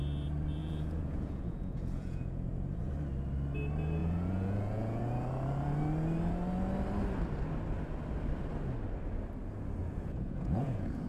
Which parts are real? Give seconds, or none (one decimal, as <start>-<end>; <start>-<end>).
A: 0.0-0.6; 2.9-4.0; 5.0-9.8